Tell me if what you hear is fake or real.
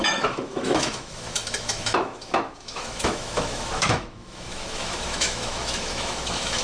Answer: fake